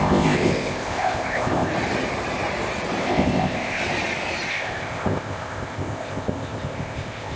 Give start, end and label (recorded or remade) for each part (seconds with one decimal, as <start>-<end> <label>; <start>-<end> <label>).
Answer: 0.0-1.7 remade; 1.7-3.0 recorded; 3.0-3.8 remade; 3.8-4.5 recorded; 4.5-7.4 remade